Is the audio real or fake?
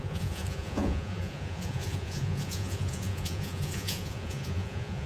fake